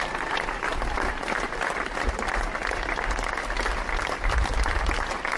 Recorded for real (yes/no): no